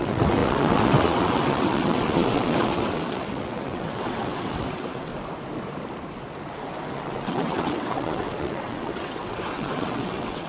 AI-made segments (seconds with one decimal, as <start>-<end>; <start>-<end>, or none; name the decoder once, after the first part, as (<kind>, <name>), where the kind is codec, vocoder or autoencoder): 0.0-5.1 (vocoder, WaveNeXt); 6.9-10.5